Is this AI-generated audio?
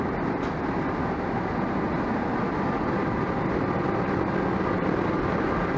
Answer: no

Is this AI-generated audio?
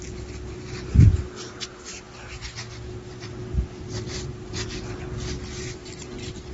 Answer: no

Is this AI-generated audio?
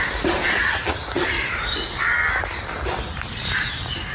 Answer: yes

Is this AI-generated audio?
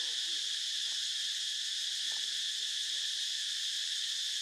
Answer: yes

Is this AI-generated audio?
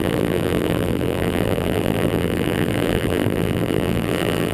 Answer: yes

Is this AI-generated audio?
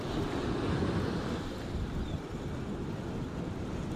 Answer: no